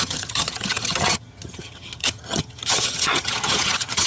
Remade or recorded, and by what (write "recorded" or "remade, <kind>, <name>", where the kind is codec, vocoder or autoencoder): remade, vocoder, HiFi-GAN